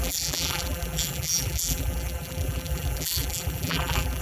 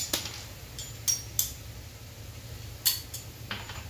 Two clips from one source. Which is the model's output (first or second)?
first